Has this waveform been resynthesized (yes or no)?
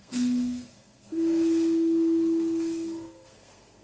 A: yes